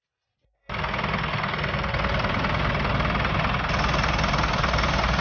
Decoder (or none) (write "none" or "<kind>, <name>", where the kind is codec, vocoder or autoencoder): none